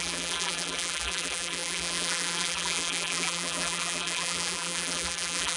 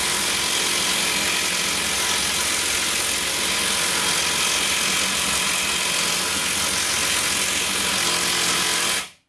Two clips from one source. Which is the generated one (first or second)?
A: first